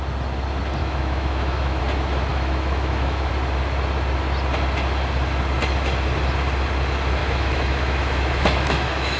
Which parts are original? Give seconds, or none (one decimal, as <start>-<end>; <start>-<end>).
0.0-0.8; 1.8-2.3; 3.3-7.2